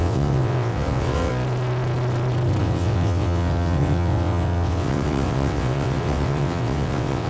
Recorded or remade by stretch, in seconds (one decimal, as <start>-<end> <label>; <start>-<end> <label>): 0.0-1.3 remade; 1.3-2.6 recorded; 2.6-7.3 remade